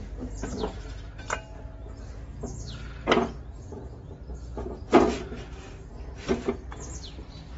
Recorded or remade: recorded